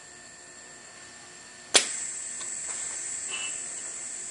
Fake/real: real